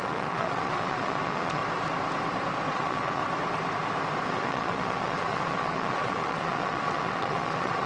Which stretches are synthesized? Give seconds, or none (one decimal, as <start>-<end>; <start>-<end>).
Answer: 0.0-1.6; 2.7-3.2; 4.3-7.9